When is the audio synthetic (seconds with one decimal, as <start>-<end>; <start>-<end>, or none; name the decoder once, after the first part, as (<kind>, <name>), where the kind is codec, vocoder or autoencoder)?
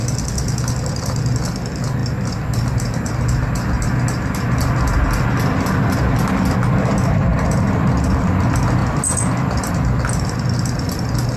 2.0-3.1 (vocoder, BigVGAN v2); 7.3-8.3; 8.8-9.7